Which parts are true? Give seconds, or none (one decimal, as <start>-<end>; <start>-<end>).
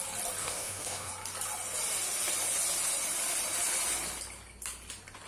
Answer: 0.0-0.4; 1.1-5.3